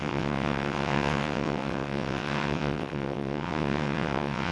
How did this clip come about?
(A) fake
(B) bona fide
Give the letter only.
A